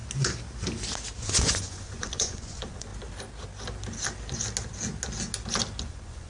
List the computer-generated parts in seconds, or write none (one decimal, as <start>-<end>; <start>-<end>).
1.2-2.9; 5.8-6.3